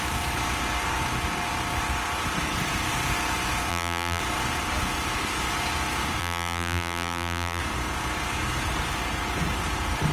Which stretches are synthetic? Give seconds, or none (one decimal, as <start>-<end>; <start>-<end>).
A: 3.7-4.2; 6.2-7.6